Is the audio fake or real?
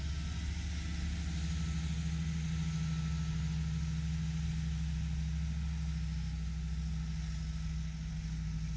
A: real